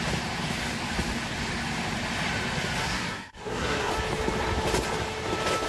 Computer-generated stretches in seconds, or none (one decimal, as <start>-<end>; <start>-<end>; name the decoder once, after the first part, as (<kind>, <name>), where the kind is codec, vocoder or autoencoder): 2.8-3.9 (codec, SNAC)